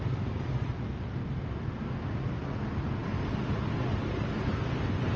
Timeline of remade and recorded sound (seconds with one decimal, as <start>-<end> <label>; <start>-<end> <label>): 0.0-5.2 recorded